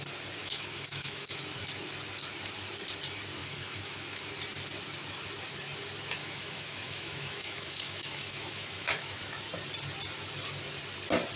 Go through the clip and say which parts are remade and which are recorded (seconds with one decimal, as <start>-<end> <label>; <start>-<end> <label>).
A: 0.0-0.4 recorded; 0.4-1.4 remade; 1.4-3.4 recorded; 3.4-4.2 remade; 4.2-6.2 recorded; 6.2-9.2 remade; 9.2-11.4 recorded